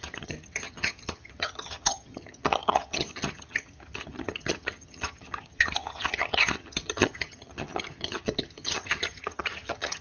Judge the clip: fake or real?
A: fake